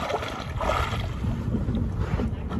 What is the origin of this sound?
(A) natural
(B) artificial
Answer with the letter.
A